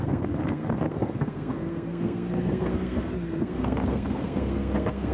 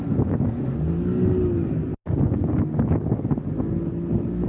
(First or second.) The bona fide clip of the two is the second